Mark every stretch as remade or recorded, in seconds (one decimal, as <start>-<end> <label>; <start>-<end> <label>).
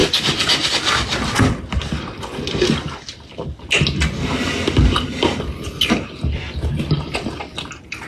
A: 0.0-8.1 recorded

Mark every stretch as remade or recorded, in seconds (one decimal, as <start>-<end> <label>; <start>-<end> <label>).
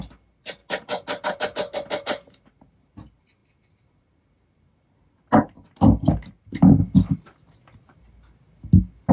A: 0.0-9.1 recorded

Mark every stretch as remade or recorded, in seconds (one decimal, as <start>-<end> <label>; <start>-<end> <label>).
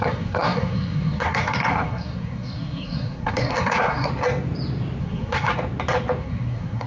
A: 0.0-4.1 remade; 4.1-5.0 recorded; 5.0-5.5 remade; 5.5-6.2 recorded; 6.2-6.9 remade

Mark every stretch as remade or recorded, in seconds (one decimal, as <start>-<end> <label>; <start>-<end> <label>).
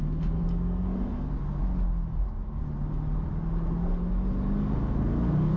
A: 0.0-1.3 remade; 1.3-4.6 recorded; 4.6-5.6 remade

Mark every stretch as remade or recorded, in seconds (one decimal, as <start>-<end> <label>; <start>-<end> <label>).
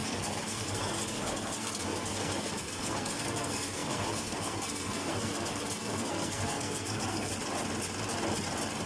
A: 0.0-7.3 remade; 7.3-8.9 recorded